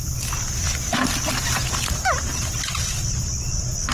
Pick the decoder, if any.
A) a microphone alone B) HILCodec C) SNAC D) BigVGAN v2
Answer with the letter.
A